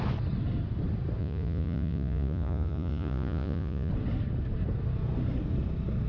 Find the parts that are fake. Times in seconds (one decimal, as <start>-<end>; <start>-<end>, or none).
1.2-3.9